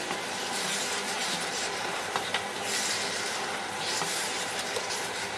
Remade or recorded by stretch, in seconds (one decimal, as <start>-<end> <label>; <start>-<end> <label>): 0.0-5.4 remade